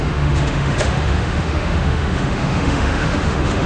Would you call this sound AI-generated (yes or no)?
yes